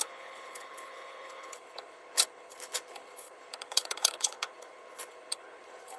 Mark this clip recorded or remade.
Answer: remade